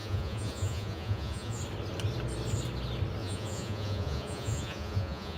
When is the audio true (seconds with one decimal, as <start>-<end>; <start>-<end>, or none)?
1.6-3.2